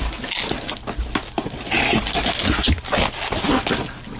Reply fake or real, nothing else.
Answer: real